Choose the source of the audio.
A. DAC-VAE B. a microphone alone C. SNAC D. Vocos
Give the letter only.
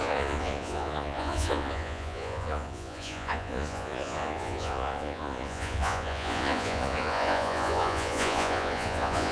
D